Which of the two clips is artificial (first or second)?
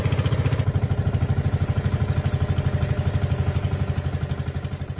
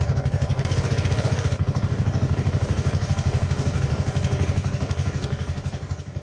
second